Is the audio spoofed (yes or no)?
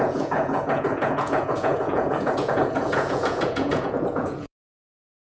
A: yes